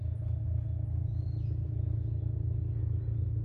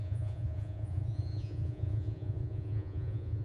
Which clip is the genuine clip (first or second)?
first